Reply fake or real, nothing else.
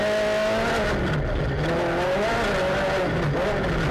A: real